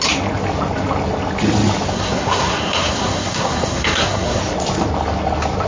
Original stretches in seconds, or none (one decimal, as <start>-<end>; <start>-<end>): 0.0-1.9; 4.4-5.7